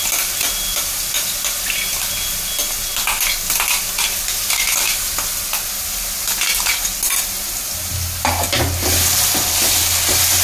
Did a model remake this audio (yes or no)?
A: no